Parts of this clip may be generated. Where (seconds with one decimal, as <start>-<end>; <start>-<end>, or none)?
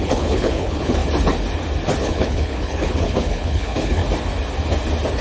0.0-1.0; 2.0-4.0